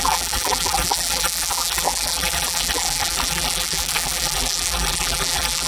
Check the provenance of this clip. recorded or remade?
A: remade